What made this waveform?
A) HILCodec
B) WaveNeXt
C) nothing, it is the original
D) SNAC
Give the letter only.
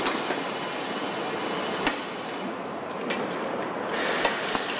C